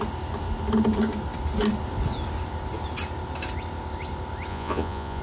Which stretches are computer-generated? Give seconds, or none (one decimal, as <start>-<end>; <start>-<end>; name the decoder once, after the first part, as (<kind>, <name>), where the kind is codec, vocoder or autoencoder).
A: 4.5-5.2 (vocoder, Vocos)